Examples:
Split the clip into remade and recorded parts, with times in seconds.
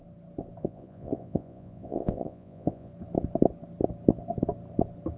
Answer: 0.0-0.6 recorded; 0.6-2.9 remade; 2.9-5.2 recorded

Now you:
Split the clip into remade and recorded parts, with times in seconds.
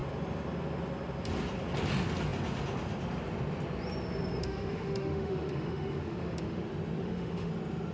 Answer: 0.0-4.4 recorded; 4.4-6.6 remade; 6.6-7.0 recorded; 7.0-7.5 remade; 7.5-7.9 recorded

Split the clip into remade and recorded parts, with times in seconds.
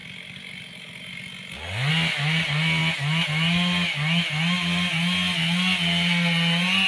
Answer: 0.0-6.9 recorded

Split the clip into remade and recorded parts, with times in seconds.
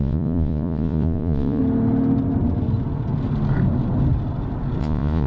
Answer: 0.0-1.6 remade; 1.6-4.8 recorded; 4.8-5.3 remade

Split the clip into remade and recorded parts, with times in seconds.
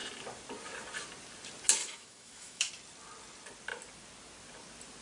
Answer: 0.0-1.8 recorded; 1.8-2.7 remade; 2.7-5.0 recorded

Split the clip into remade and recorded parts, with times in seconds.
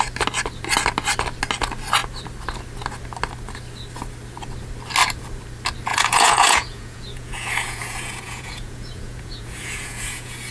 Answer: 0.0-5.9 recorded; 5.9-10.5 remade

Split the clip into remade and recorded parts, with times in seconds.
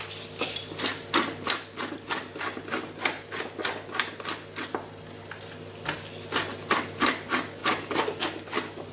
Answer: 0.0-8.9 recorded